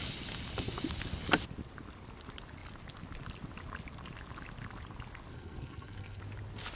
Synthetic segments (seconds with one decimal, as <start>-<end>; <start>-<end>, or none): 5.3-6.2